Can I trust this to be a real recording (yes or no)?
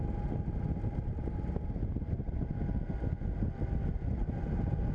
yes